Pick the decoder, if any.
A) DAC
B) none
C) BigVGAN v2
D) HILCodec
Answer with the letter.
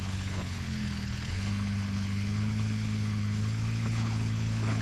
D